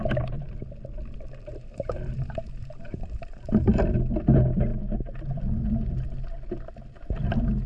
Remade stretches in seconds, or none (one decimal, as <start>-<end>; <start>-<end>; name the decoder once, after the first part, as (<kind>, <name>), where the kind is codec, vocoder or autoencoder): 1.5-3.8 (vocoder, BigVGAN v2)